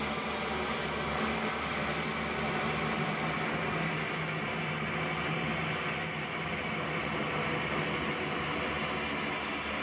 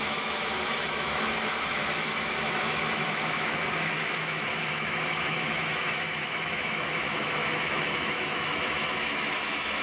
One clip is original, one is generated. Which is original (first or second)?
first